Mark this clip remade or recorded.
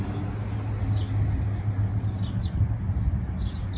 recorded